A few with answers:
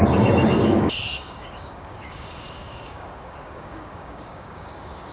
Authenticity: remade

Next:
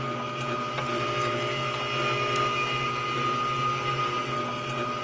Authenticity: recorded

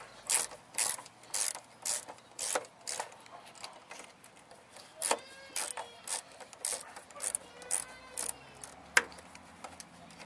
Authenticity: recorded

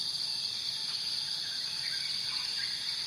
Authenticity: recorded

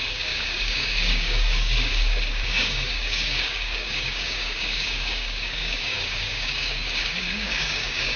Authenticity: remade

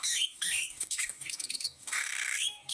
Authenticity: remade